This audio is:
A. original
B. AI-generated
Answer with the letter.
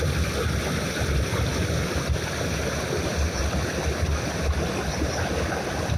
A